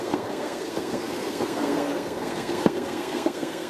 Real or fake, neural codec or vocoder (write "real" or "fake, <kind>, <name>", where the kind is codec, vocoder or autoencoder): fake, codec, SNAC